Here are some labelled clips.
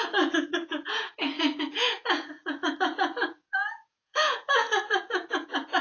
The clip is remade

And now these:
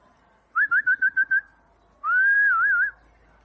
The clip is recorded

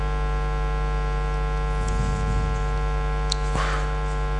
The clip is recorded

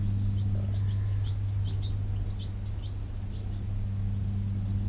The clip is recorded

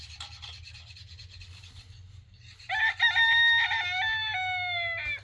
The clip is recorded